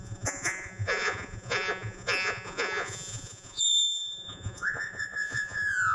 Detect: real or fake fake